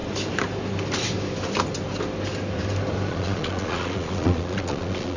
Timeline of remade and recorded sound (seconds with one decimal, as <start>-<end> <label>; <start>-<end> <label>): 0.0-3.1 recorded; 3.1-5.2 remade